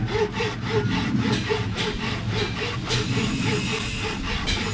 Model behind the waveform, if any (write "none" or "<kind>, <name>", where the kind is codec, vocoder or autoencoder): none